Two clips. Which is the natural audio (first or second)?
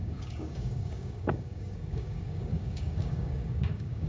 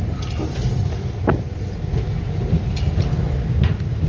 second